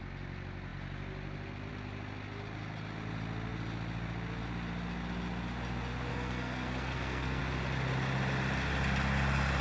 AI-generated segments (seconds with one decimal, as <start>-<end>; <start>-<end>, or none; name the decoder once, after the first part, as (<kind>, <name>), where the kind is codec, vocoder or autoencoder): 6.1-7.4 (codec, SNAC)